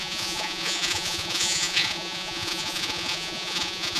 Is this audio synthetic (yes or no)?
yes